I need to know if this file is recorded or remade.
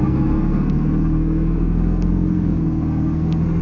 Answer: remade